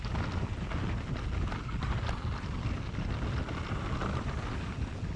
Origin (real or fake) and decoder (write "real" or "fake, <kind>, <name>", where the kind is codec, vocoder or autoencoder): real